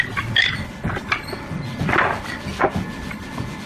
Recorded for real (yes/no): yes